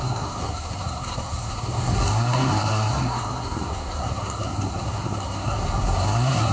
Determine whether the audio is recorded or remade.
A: remade